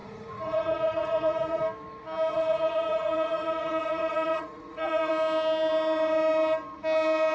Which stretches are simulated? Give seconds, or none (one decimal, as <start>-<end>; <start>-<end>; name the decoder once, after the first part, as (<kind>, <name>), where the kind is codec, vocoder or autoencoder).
0.0-1.6 (vocoder, Vocos); 2.3-5.1